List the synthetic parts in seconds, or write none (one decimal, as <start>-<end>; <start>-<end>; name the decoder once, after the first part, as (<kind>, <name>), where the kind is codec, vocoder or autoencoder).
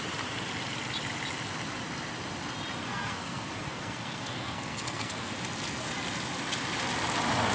2.8-5.3 (codec, SNAC)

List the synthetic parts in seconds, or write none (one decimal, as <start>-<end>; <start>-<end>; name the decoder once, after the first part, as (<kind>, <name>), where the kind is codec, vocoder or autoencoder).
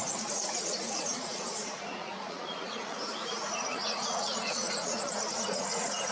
0.0-6.1 (vocoder, Vocos)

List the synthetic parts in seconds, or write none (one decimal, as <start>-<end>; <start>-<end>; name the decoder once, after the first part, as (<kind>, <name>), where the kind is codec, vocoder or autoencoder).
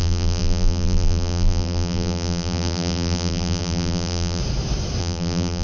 0.0-4.4 (vocoder, BigVGAN v2); 5.0-5.6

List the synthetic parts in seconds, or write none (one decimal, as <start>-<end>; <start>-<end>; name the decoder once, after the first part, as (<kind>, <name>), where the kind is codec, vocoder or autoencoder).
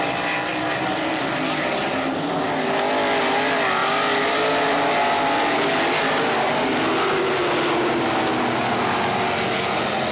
none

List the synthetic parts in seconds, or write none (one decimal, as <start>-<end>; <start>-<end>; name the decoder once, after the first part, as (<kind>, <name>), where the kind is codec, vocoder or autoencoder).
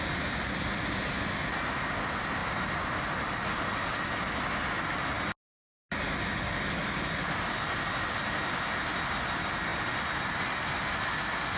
none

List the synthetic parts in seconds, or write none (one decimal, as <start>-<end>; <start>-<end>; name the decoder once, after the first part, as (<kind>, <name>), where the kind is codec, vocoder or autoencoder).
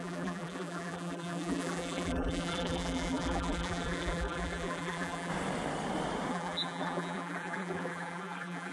0.0-5.3 (vocoder, BigVGAN v2); 6.3-8.7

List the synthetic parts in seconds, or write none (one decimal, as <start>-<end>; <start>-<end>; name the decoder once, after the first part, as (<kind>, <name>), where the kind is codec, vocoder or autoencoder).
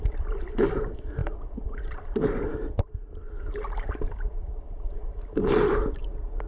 none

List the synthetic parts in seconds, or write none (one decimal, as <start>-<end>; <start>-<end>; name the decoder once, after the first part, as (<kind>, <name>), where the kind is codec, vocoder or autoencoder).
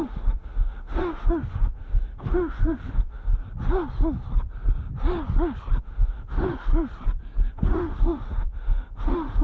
0.0-3.3 (autoencoder, DAC-VAE); 5.8-6.7; 7.5-9.4